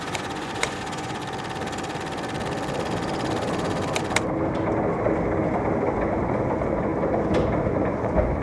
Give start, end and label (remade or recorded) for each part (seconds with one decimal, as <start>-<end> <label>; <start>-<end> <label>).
0.0-1.2 remade; 1.2-5.9 recorded; 5.9-6.9 remade; 6.9-7.7 recorded; 7.7-8.4 remade

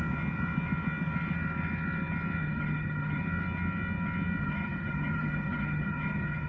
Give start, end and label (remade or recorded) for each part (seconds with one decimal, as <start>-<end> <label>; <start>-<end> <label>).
0.0-2.4 recorded; 2.4-3.2 remade; 3.2-4.4 recorded; 4.4-6.5 remade

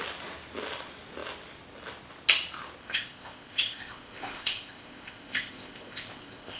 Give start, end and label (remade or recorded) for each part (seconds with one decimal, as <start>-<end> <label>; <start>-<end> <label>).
0.0-2.8 recorded; 2.8-6.6 remade

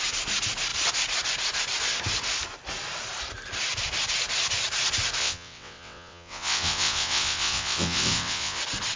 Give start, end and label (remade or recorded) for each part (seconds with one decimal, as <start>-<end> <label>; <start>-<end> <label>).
0.0-5.2 recorded; 5.2-8.6 remade; 8.6-9.0 recorded